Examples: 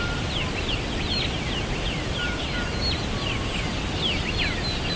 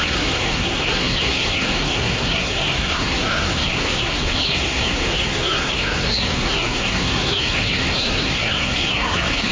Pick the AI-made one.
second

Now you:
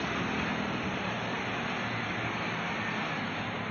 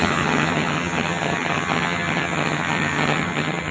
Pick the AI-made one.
second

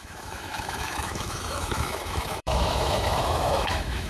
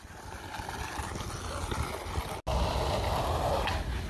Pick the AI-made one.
first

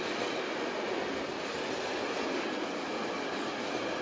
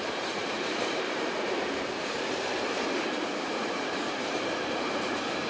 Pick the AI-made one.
second